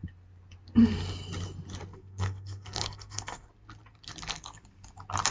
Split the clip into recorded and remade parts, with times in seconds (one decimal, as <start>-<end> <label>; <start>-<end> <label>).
0.0-1.9 recorded; 1.9-3.5 remade; 3.5-5.3 recorded